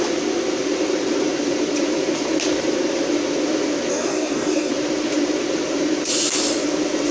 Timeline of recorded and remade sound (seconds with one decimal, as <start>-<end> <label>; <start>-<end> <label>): 0.0-3.9 recorded; 3.9-4.7 remade; 4.7-7.1 recorded